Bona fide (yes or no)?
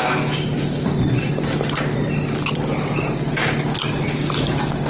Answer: yes